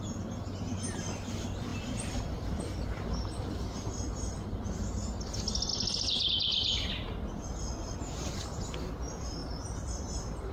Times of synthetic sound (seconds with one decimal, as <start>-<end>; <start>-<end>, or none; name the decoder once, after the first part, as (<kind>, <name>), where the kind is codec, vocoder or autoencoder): 1.7-4.7 (vocoder, BigVGAN v2); 5.7-6.3; 9.4-10.5